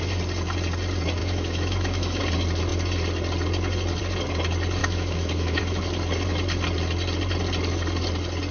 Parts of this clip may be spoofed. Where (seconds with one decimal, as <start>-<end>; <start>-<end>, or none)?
1.2-2.2; 4.8-5.6